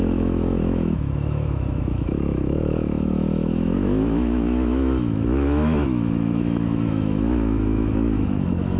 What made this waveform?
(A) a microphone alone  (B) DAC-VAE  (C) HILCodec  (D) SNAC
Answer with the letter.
B